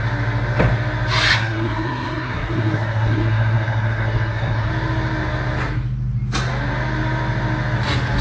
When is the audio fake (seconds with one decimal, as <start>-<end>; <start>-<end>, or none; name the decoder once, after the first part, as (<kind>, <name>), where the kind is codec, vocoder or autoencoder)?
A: 1.3-4.7 (codec, SNAC)